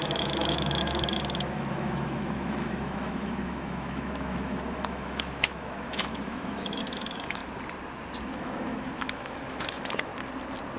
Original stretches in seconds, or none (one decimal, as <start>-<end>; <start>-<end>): 7.4-8.2; 10.1-10.8